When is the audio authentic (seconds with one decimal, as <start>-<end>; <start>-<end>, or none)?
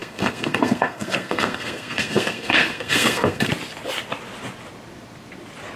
3.5-5.8